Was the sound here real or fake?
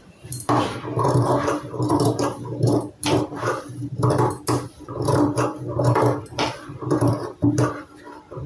fake